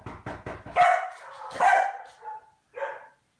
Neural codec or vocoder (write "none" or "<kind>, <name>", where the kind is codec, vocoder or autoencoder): none